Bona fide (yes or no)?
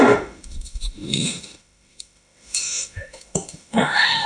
no